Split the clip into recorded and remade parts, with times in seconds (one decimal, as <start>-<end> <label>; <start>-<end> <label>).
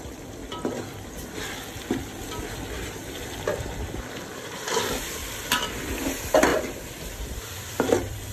0.0-0.4 remade; 0.4-4.1 recorded; 4.1-5.2 remade; 5.2-6.0 recorded; 6.0-8.3 remade